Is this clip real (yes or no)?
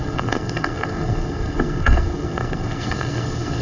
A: no